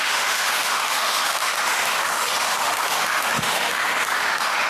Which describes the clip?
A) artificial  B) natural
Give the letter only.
A